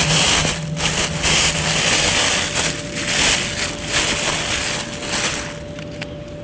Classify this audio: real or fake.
real